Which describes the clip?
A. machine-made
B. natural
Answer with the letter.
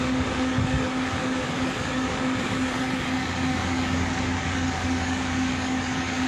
A